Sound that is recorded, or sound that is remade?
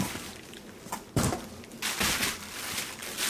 recorded